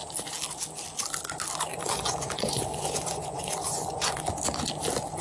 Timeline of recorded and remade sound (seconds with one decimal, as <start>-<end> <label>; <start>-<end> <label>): 0.0-1.7 recorded; 1.7-4.2 remade; 4.2-5.2 recorded